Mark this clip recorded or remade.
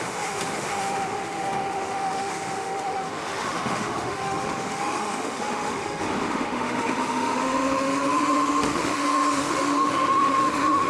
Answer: remade